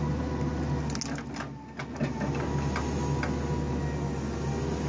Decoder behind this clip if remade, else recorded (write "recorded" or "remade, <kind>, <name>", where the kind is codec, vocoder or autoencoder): recorded